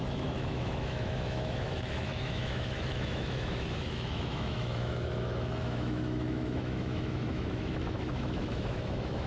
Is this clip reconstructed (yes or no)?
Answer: yes